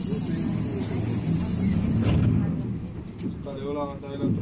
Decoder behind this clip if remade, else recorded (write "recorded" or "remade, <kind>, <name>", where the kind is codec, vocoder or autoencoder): recorded